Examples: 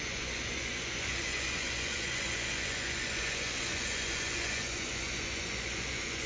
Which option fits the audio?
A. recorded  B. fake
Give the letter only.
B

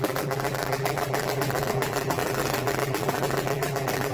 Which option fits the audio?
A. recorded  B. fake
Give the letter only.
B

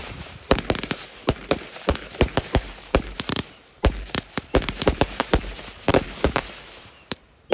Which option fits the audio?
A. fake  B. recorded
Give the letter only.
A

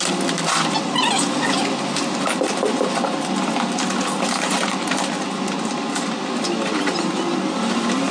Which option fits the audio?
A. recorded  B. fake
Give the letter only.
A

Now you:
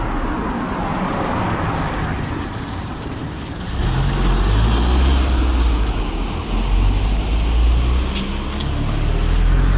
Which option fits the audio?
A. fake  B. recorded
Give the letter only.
B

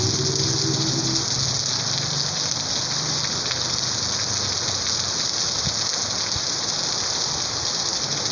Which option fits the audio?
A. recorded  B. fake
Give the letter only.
A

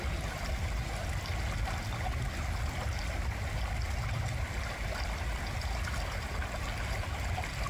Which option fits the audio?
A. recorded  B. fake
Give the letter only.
A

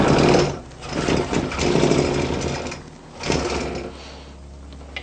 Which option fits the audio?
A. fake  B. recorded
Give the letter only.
B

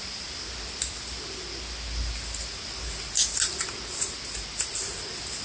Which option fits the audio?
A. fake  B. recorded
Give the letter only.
B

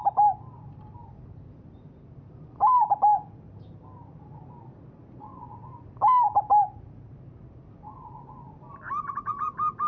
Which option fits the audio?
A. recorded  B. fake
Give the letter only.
A